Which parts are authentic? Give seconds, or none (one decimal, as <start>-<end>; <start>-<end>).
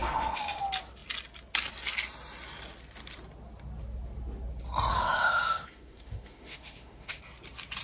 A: 0.6-4.9; 7.2-7.8